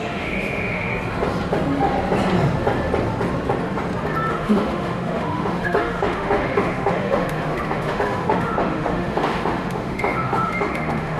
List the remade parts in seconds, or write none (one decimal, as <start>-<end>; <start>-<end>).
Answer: 0.0-0.9; 4.3-11.2